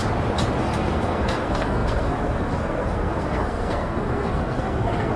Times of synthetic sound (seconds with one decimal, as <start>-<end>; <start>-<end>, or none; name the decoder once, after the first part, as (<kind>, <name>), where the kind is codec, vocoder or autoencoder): 0.6-5.2 (codec, SNAC)